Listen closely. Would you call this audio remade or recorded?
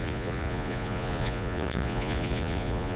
remade